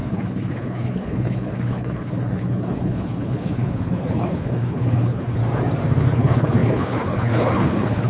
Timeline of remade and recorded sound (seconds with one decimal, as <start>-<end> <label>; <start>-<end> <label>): 0.0-5.4 remade; 5.4-6.0 recorded; 6.0-8.1 remade